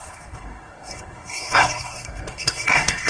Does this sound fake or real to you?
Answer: fake